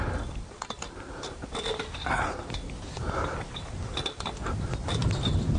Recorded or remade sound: recorded